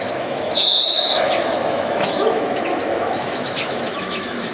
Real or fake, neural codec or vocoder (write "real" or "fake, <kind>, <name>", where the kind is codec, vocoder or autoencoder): fake, autoencoder, DAC-VAE